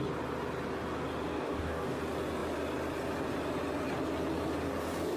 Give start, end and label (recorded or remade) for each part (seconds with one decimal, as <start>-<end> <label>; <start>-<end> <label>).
0.0-1.3 recorded; 1.3-2.0 remade; 2.0-5.2 recorded